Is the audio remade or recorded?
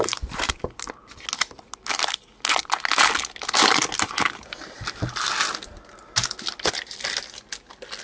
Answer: recorded